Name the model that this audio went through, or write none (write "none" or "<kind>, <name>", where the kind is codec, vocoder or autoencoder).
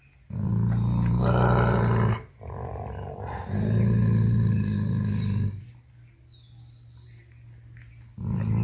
none